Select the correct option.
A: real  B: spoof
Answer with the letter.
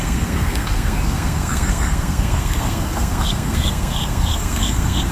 B